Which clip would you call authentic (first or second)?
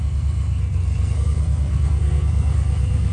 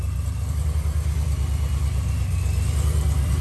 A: second